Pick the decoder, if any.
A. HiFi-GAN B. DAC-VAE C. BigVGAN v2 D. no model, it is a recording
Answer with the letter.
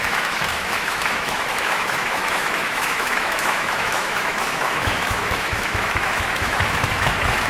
B